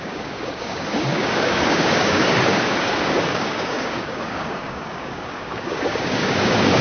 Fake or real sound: fake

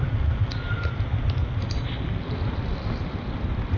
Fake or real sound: real